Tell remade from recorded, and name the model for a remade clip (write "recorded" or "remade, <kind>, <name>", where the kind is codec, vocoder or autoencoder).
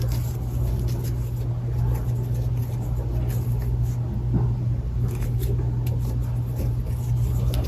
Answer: recorded